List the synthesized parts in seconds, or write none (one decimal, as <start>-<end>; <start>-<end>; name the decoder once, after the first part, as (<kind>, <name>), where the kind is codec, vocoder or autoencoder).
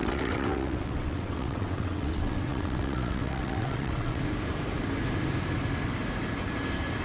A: 0.0-4.2 (vocoder, WaveNeXt)